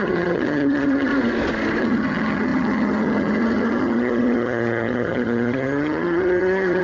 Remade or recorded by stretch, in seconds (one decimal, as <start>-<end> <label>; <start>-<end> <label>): 0.0-1.1 remade; 1.1-1.8 recorded; 1.8-6.8 remade